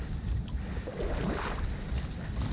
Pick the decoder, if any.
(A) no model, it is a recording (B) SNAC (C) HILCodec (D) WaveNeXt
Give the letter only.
A